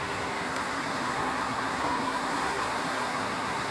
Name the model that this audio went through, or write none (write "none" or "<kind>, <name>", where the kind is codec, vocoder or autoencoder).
codec, SNAC